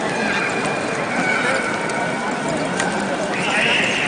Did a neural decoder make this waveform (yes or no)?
no